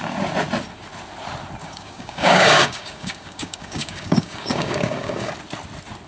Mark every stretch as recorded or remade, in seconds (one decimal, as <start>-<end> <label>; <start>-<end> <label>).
0.0-1.6 recorded; 1.6-5.3 remade; 5.3-6.1 recorded